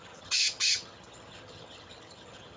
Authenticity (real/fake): fake